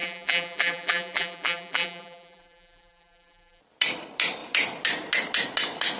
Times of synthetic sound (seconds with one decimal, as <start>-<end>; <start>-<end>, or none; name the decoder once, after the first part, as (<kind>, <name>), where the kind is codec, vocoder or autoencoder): 0.0-3.6 (vocoder, BigVGAN v2)